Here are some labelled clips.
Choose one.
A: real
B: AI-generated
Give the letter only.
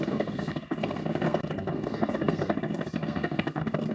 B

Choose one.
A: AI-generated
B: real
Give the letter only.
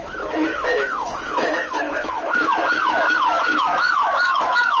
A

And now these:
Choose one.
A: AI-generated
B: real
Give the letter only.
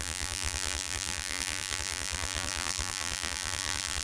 A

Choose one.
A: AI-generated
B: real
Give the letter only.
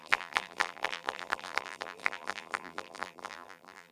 A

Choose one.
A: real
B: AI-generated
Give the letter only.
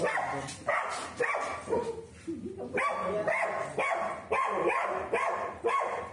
A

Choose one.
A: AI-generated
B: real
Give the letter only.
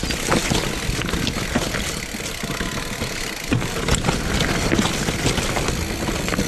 B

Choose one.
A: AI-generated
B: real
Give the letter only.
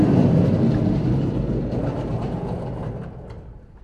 B